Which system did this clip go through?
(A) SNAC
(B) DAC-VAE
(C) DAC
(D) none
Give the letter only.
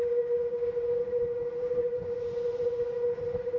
D